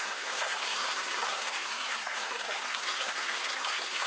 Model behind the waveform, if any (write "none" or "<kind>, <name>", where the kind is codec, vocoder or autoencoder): codec, SNAC